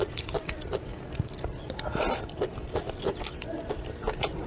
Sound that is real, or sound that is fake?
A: real